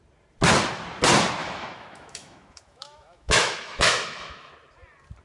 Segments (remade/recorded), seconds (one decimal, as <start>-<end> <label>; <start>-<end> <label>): 0.0-1.4 recorded; 1.4-4.5 remade; 4.5-5.2 recorded